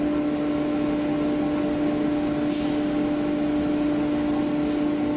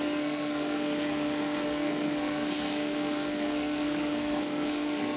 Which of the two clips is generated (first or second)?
second